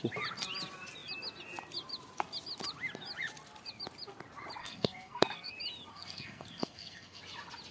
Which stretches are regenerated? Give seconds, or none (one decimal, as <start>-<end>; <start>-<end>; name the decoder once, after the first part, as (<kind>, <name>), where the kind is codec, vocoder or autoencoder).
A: 4.6-5.5 (codec, SNAC); 5.9-7.2